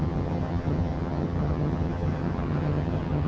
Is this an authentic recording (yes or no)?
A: no